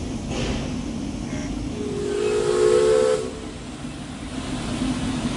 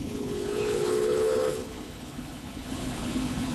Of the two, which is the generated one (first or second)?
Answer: second